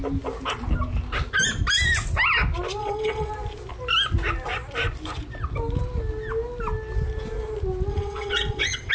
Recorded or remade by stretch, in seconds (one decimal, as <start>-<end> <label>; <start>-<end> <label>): 0.0-2.8 recorded; 2.8-3.3 remade; 3.3-7.9 recorded; 7.9-8.9 remade